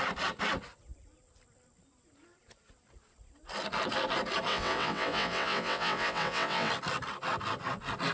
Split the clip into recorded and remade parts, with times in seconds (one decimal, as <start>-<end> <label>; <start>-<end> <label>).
0.0-4.5 recorded; 4.5-6.7 remade; 6.7-8.1 recorded